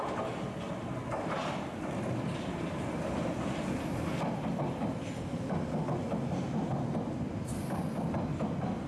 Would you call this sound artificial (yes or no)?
no